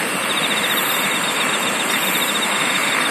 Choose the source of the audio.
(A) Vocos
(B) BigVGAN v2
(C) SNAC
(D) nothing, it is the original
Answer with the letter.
B